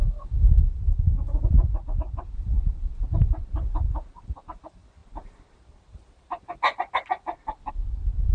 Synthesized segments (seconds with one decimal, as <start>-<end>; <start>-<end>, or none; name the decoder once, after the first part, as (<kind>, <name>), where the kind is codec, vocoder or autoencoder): none